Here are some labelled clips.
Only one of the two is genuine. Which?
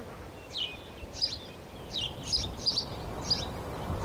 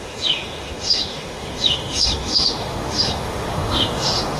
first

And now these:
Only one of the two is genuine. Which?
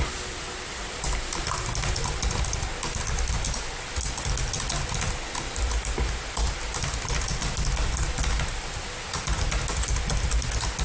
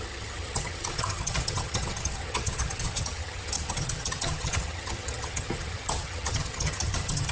first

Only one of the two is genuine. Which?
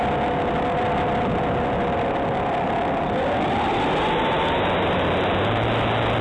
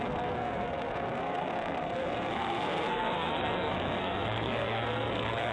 first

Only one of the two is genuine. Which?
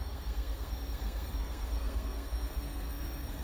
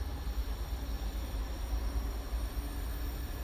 second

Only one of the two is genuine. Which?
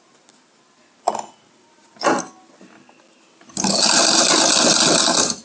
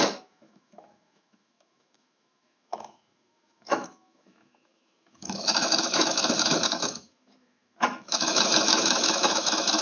first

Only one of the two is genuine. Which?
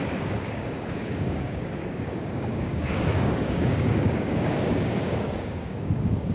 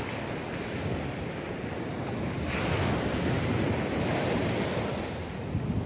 second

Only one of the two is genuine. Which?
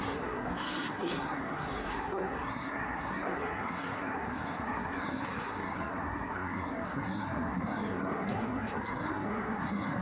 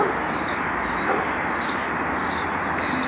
second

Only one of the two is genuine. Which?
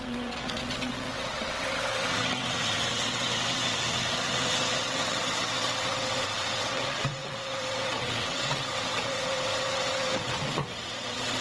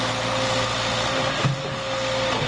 second